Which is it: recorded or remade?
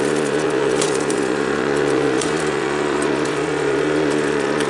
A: remade